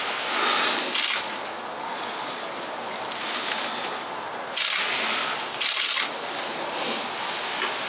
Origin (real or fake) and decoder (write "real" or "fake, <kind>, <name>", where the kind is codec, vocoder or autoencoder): real